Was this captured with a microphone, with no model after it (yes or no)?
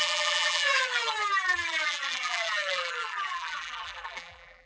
no